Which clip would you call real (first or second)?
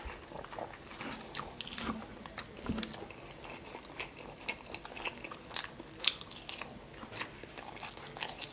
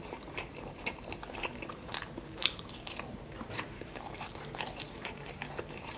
first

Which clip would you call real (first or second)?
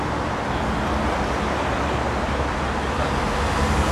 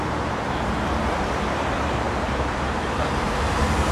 first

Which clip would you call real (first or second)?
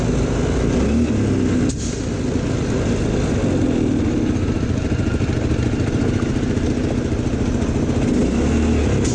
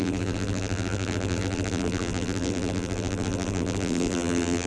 first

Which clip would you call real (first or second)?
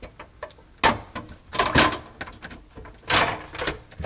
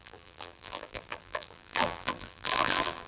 first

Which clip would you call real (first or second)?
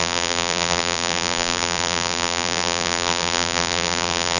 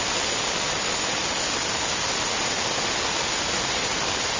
second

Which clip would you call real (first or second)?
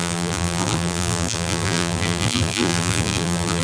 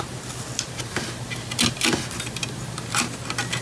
second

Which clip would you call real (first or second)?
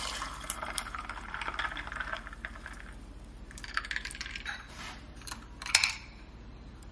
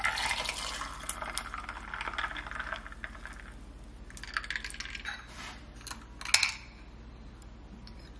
second